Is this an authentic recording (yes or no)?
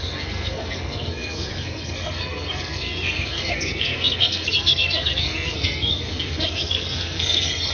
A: no